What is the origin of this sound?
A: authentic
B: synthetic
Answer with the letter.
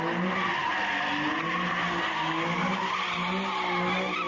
A